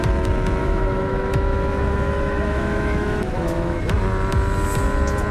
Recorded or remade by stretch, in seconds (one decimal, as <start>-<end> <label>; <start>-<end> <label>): 0.0-0.6 recorded; 0.6-3.8 remade; 3.8-5.3 recorded